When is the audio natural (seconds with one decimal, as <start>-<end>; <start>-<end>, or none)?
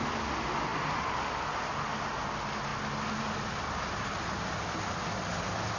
0.0-5.8